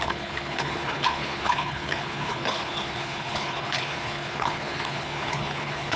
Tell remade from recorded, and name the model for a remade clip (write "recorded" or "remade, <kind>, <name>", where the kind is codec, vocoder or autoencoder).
remade, codec, HILCodec